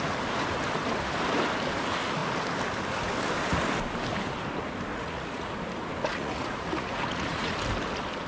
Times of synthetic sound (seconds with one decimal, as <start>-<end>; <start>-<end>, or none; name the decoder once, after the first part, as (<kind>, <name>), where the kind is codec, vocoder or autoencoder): 4.9-5.5 (vocoder, Vocos); 6.1-7.5